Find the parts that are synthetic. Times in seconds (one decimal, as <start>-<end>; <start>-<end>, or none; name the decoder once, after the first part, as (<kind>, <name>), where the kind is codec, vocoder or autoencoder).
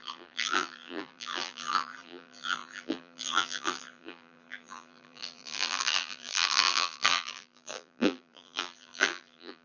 0.0-9.6 (vocoder, BigVGAN v2)